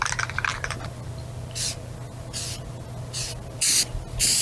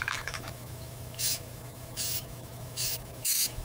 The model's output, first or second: second